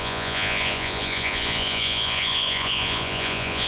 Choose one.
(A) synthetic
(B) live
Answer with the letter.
A